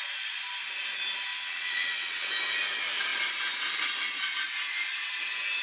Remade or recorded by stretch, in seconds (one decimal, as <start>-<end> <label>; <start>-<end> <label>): 0.0-1.3 recorded; 1.3-2.3 remade; 2.3-5.6 recorded